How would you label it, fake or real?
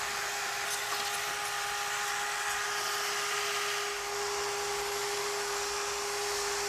real